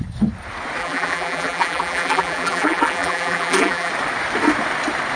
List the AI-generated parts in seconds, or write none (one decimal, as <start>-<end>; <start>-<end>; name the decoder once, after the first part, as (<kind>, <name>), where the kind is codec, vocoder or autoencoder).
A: 0.8-3.9 (vocoder, BigVGAN v2)